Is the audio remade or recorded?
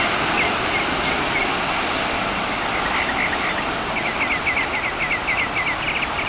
recorded